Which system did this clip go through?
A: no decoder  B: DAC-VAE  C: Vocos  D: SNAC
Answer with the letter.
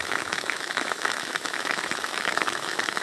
B